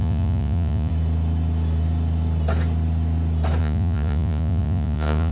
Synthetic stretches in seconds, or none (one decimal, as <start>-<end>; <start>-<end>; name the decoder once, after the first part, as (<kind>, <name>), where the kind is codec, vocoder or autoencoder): 0.0-0.9 (vocoder, Vocos); 3.6-5.3